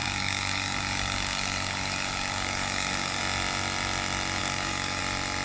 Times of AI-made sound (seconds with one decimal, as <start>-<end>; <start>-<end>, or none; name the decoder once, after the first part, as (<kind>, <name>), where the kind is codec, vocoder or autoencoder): 0.0-3.2 (codec, DAC); 4.4-5.0